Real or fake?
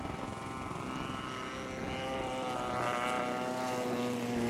real